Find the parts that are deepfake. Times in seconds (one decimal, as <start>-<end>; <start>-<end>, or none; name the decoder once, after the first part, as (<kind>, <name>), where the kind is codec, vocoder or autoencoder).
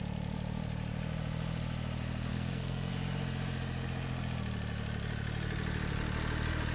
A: 2.3-2.9 (codec, SNAC)